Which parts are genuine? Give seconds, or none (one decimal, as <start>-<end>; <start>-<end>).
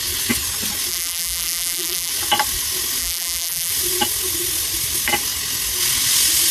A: 0.0-0.9; 2.1-3.0; 3.7-6.5